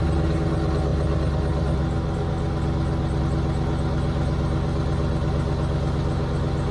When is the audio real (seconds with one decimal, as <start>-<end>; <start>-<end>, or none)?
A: 0.0-6.7

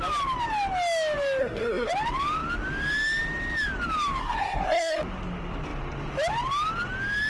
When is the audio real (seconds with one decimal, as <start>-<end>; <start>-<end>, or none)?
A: 0.0-1.4; 1.9-4.2; 5.0-7.3

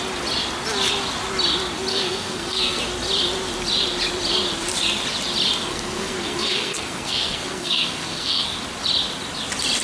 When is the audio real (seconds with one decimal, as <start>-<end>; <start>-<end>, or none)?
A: 0.0-1.9; 2.8-5.7; 8.6-9.8

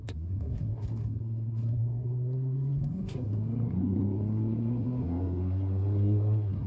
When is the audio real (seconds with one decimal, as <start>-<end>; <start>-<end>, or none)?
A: none

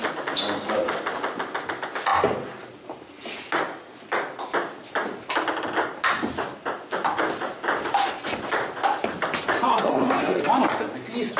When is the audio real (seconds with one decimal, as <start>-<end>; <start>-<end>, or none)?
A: 0.0-9.7; 10.4-11.4

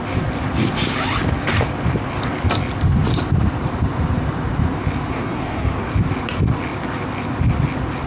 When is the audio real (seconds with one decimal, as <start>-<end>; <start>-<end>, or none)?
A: 0.0-5.1; 5.9-8.1